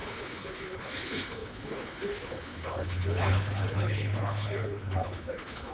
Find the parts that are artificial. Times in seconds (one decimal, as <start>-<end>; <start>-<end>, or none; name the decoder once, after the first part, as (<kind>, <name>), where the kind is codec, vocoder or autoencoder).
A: 0.0-5.7 (codec, HILCodec)